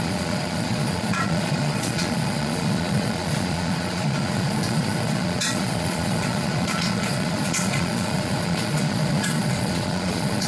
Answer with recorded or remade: remade